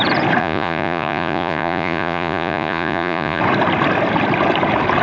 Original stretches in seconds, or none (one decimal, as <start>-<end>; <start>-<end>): 0.0-0.4; 3.4-5.0